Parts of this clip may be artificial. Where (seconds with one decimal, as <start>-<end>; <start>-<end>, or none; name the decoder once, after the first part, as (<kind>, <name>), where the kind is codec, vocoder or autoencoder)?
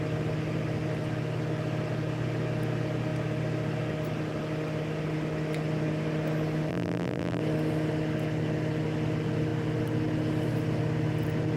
6.7-7.4 (vocoder, BigVGAN v2)